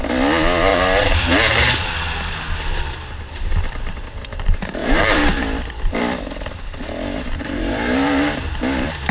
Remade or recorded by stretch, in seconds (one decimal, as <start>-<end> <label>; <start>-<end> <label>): 0.0-0.7 recorded; 0.7-1.2 remade; 1.2-4.8 recorded; 4.8-5.4 remade; 5.4-7.4 recorded; 7.4-8.4 remade; 8.4-9.1 recorded